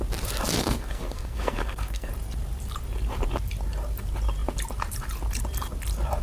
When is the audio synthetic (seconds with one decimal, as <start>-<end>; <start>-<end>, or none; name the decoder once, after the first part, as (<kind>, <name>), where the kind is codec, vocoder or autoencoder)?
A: 0.6-2.1 (codec, SNAC)